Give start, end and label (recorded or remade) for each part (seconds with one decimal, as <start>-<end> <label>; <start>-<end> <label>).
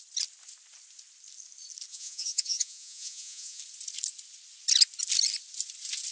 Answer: 0.0-1.9 recorded; 1.9-3.6 remade; 3.6-6.1 recorded